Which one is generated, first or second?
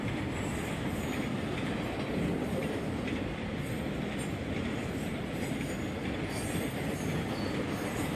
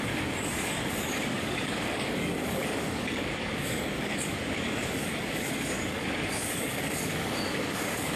second